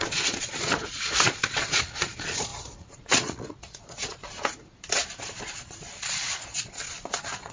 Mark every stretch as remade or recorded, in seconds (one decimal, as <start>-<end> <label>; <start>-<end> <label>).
0.0-4.2 remade; 4.2-5.2 recorded; 5.2-7.5 remade